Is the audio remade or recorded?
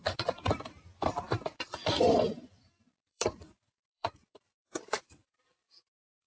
remade